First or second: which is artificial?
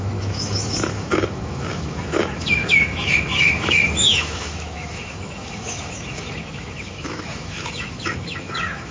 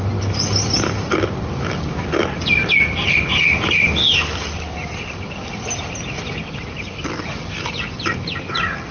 first